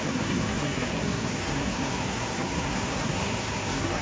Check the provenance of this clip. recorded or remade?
remade